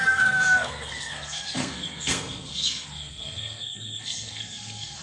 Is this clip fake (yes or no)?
yes